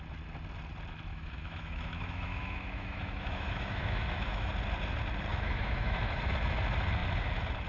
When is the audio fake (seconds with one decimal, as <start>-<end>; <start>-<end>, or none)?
1.1-4.5; 5.3-6.2